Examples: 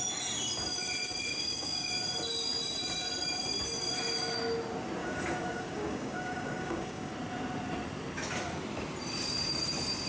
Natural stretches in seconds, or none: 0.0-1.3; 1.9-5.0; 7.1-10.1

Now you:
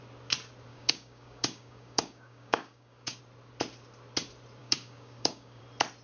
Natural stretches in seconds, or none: 0.0-0.7; 3.2-4.6; 5.6-6.0

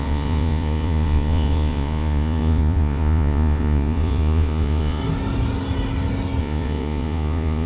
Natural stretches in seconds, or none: 5.0-6.4